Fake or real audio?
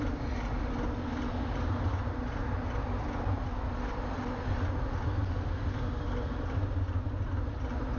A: real